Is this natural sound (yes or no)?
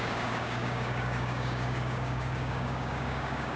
no